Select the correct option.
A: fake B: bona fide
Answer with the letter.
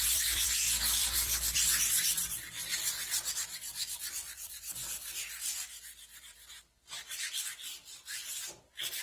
A